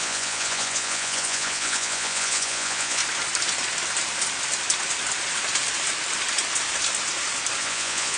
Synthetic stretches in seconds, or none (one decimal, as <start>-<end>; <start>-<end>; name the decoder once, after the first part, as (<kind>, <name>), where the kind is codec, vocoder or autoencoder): 0.0-3.0 (vocoder, Vocos); 7.6-8.2